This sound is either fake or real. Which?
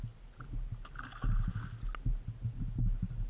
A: real